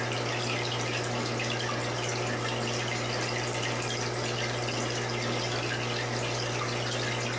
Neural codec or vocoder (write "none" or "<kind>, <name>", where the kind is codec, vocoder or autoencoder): none